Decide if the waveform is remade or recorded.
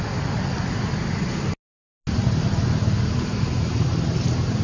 recorded